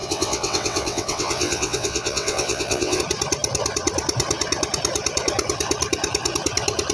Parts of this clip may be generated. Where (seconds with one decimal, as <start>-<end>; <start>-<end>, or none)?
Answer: 0.0-3.0